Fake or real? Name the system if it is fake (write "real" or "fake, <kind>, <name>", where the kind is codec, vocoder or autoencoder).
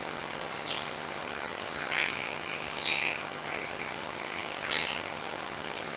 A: fake, vocoder, HiFi-GAN